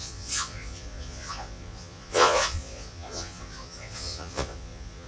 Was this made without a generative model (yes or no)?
no